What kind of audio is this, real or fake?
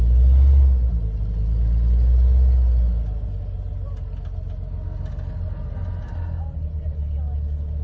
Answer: real